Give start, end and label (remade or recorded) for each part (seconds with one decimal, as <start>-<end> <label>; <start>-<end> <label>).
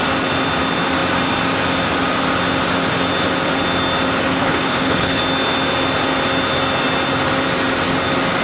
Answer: 0.0-4.4 recorded; 4.4-5.2 remade; 5.2-8.4 recorded